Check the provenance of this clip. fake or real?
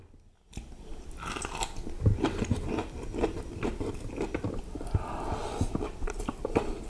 real